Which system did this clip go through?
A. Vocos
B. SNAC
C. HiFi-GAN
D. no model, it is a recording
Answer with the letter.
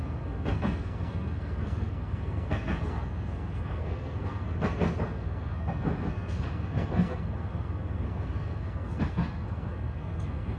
B